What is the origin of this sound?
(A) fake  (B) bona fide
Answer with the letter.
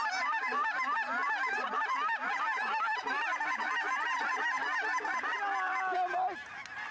B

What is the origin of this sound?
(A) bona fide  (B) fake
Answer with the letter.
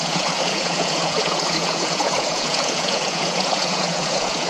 B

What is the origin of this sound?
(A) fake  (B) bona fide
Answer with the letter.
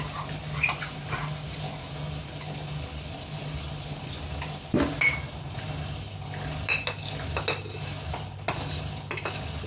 B